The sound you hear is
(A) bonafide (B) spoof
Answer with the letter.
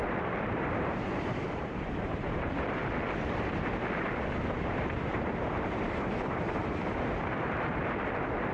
B